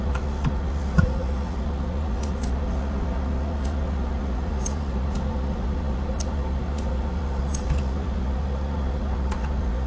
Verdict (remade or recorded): remade